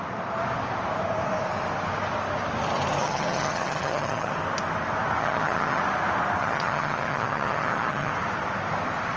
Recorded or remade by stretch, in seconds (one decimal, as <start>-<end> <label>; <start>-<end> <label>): 0.0-3.0 recorded; 3.0-4.3 remade; 4.3-5.2 recorded; 5.2-5.8 remade; 5.8-6.4 recorded; 6.4-8.1 remade; 8.1-9.2 recorded